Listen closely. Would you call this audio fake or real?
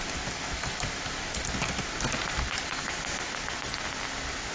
real